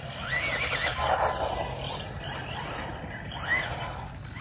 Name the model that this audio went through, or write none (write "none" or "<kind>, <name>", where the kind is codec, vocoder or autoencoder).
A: none